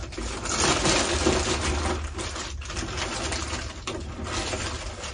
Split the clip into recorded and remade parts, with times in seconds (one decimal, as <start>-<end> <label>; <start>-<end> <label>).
0.0-5.1 recorded